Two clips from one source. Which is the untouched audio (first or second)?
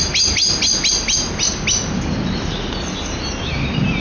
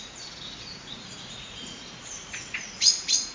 first